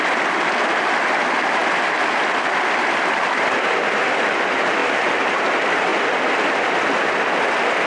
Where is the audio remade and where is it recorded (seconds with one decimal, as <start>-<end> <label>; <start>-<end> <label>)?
0.0-7.9 recorded